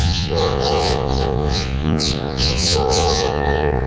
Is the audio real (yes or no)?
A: no